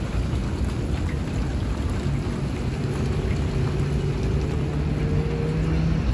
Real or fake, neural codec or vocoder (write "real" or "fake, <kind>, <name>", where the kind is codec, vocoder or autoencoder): real